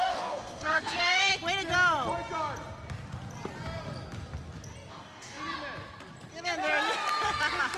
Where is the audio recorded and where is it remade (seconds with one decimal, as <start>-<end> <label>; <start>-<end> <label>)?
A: 0.0-1.3 remade; 1.3-4.9 recorded; 4.9-5.4 remade; 5.4-7.8 recorded